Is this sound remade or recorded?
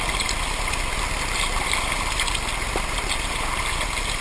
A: recorded